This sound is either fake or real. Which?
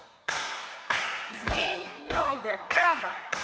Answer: fake